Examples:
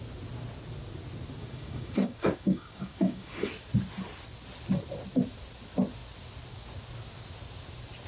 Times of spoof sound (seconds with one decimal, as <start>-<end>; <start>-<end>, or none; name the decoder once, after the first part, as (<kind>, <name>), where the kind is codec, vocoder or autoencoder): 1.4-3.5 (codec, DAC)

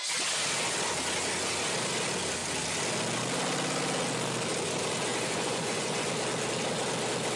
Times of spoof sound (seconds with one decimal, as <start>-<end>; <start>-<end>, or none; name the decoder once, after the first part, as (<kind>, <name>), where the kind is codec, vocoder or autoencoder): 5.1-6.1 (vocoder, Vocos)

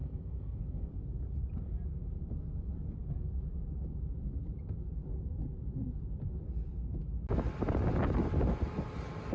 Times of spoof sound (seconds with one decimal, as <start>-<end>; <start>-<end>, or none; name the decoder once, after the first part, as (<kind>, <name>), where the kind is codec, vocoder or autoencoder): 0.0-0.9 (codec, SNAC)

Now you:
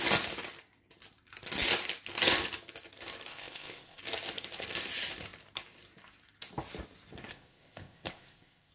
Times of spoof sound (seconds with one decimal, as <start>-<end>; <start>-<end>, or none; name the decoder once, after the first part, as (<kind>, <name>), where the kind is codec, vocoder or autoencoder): 3.3-4.0 (codec, ZipCodec); 7.3-8.7

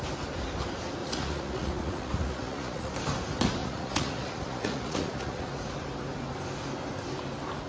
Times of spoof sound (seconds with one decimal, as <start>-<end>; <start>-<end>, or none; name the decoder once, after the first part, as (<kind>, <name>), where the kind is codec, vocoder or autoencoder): 1.0-2.9 (vocoder, Vocos); 3.6-5.5

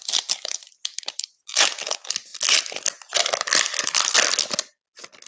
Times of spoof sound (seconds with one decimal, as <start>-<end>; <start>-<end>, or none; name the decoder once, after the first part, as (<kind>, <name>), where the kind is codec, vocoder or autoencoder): none

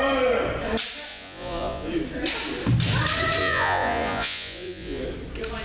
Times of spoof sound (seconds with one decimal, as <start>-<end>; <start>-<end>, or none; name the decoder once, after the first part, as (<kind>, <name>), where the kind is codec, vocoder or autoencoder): 1.1-1.9 (vocoder, Vocos); 3.4-5.0